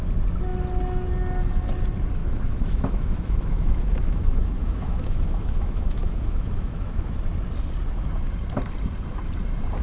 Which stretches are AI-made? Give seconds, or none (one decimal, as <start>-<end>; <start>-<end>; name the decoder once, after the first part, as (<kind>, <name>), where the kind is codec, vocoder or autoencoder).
2.2-7.2 (autoencoder, DAC-VAE)